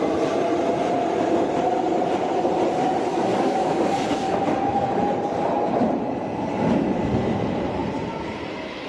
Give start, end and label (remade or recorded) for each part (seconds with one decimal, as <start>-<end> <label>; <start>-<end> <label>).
0.0-3.1 recorded; 3.1-4.9 remade; 4.9-8.9 recorded